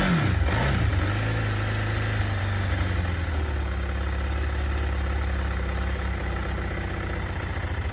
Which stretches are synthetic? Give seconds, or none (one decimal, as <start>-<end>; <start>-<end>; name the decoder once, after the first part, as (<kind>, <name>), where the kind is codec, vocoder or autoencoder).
none